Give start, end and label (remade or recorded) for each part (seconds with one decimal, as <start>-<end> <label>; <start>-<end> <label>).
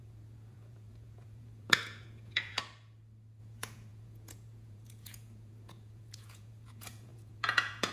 0.0-2.6 remade; 2.6-3.4 recorded; 3.4-7.9 remade